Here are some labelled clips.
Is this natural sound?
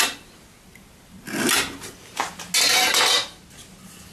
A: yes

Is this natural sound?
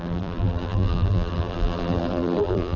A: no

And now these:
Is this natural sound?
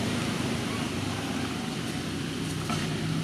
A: no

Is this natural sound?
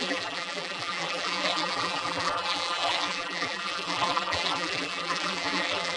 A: no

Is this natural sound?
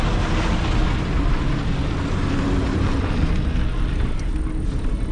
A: yes